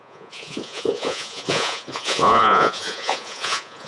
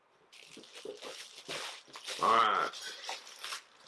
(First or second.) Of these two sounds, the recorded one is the second